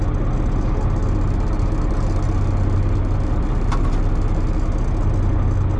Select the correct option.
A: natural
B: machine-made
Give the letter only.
A